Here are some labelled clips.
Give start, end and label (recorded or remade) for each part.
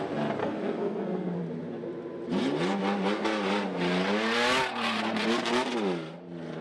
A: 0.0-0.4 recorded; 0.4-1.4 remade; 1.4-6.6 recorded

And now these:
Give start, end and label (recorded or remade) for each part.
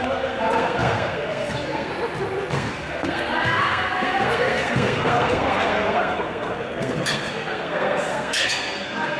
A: 0.0-1.9 remade; 1.9-2.5 recorded; 2.5-9.2 remade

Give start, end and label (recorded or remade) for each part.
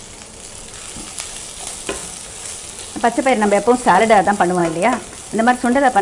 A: 0.0-6.0 recorded